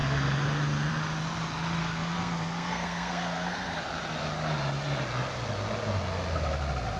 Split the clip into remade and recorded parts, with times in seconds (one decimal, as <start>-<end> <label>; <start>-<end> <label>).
0.0-1.8 recorded; 1.8-3.8 remade; 3.8-7.0 recorded